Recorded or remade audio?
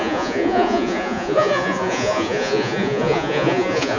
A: remade